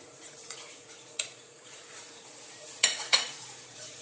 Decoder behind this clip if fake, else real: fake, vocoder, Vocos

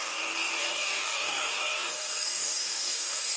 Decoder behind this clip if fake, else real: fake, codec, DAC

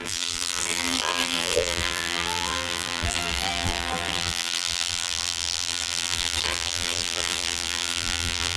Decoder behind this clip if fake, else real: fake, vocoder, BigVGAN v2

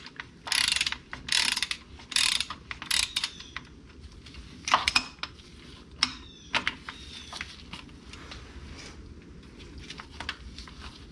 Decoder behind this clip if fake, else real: real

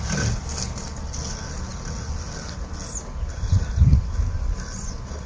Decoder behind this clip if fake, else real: real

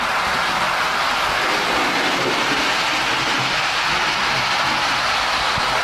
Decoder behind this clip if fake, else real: real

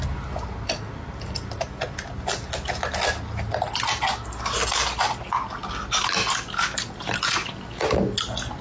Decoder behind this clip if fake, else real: real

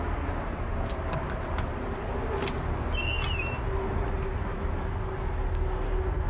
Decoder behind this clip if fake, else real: real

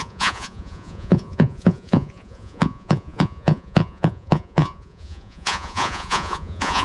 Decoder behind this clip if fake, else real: fake, vocoder, Vocos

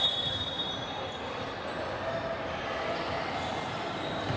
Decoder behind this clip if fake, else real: real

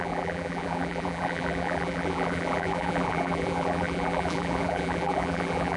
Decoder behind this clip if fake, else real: fake, vocoder, BigVGAN v2